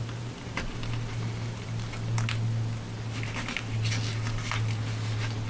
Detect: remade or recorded recorded